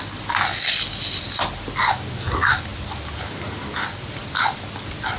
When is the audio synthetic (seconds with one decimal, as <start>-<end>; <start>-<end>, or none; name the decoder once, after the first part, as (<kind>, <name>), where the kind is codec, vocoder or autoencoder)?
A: none

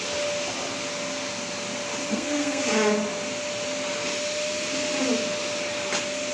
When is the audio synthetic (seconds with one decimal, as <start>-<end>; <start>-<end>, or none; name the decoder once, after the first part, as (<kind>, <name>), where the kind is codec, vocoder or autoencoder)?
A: 2.1-2.6 (codec, SNAC)